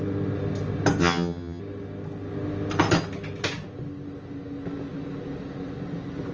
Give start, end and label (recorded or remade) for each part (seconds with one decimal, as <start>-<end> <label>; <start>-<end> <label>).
0.0-1.0 recorded; 1.0-1.6 remade; 1.6-6.3 recorded